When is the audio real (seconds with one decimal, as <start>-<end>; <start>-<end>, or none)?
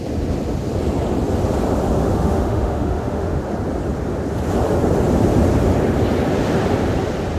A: 0.0-2.0; 3.4-7.4